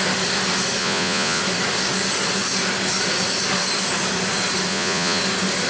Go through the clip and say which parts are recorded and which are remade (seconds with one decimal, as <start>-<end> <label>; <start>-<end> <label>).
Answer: 0.0-0.8 recorded; 0.8-1.4 remade; 1.4-4.7 recorded; 4.7-5.2 remade; 5.2-5.7 recorded